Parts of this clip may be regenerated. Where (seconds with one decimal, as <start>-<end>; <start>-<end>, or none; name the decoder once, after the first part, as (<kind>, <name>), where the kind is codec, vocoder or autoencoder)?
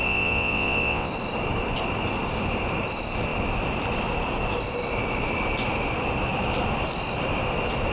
0.0-1.1 (vocoder, WaveNeXt)